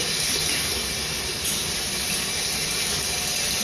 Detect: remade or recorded recorded